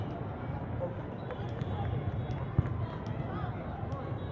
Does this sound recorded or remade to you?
recorded